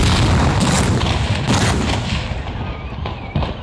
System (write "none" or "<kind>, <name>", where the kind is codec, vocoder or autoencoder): none